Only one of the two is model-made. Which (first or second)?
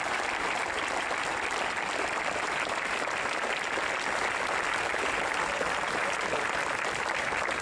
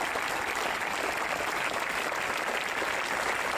first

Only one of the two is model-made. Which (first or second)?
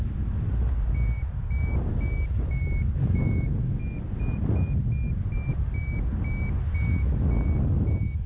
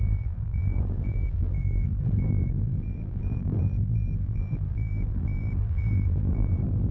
second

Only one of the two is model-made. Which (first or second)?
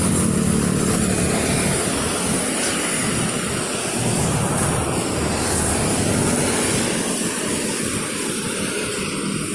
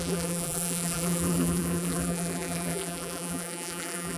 second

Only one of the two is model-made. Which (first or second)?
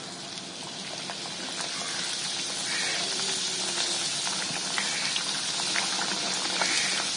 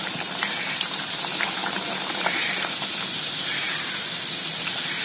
second